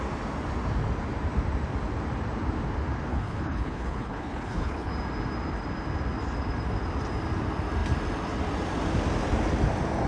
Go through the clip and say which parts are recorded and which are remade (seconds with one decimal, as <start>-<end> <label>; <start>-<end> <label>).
0.0-3.1 recorded; 3.1-4.9 remade; 4.9-10.1 recorded